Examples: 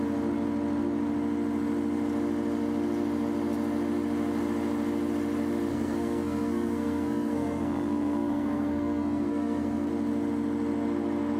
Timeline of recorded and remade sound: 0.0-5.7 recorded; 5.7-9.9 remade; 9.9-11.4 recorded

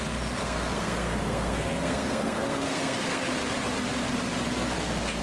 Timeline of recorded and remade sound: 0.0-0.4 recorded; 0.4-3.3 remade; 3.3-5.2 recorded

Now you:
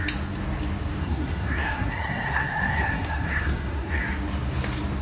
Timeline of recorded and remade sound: 0.0-1.0 recorded; 1.0-4.0 remade; 4.0-5.0 recorded

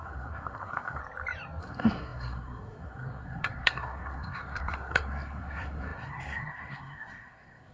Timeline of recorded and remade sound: 0.0-1.0 remade; 1.0-1.6 recorded; 1.6-7.7 remade

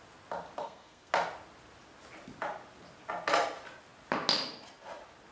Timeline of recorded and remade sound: 0.0-0.6 recorded; 0.6-1.1 remade; 1.1-5.3 recorded

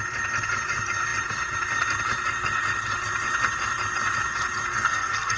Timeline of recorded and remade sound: 0.0-4.7 recorded; 4.7-5.4 remade

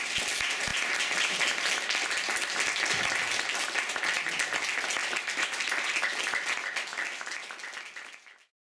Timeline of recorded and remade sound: 0.0-8.7 recorded

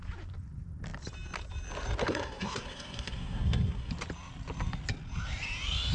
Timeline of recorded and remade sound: 0.0-2.0 recorded; 2.0-3.9 remade; 3.9-5.9 recorded